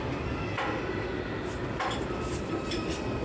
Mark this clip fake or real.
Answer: real